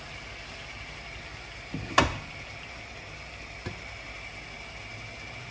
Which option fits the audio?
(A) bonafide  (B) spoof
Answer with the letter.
A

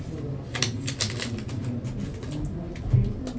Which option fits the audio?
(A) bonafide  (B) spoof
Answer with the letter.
A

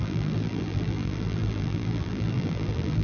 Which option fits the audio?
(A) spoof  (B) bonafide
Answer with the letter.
A